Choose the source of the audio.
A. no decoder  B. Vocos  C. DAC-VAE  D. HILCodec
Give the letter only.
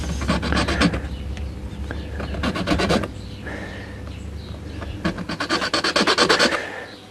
A